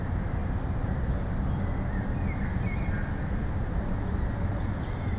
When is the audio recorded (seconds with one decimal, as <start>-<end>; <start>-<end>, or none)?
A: 0.0-5.2